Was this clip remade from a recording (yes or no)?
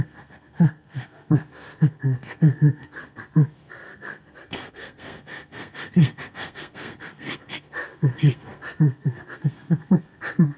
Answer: yes